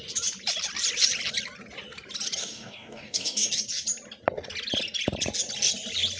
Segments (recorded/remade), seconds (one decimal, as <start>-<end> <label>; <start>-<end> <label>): 0.0-2.4 recorded; 2.4-3.5 remade; 3.5-6.2 recorded